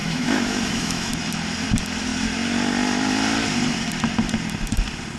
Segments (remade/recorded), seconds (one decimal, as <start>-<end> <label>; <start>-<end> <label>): 0.0-1.1 remade; 1.1-5.2 recorded